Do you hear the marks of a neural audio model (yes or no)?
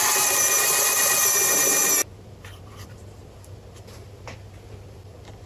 no